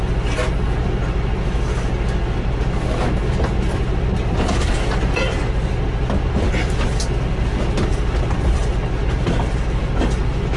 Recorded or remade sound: recorded